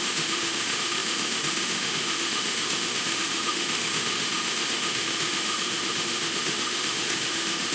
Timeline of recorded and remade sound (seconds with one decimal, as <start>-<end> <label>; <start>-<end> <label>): 0.0-7.7 remade